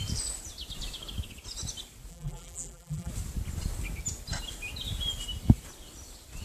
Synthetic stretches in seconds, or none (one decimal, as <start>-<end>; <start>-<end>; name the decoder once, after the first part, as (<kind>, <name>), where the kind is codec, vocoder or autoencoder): 2.1-3.1 (vocoder, BigVGAN v2)